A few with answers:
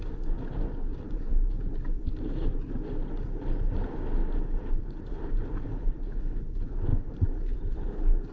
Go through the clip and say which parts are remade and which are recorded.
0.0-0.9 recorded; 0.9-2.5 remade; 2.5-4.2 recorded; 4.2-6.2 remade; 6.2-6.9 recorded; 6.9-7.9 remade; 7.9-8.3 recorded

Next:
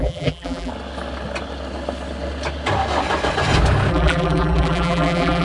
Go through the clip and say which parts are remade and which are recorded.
0.0-0.7 remade; 0.7-3.9 recorded; 3.9-5.4 remade

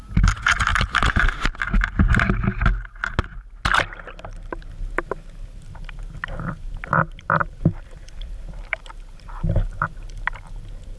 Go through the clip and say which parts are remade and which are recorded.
0.0-7.4 recorded; 7.4-8.8 remade; 8.8-11.0 recorded